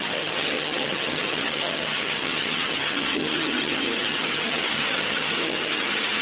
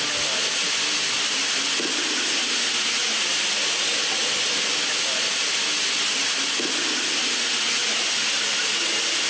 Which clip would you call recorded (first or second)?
second